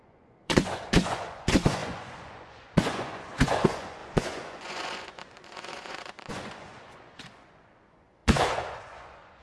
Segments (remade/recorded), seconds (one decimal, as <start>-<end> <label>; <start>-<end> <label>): 0.0-9.4 remade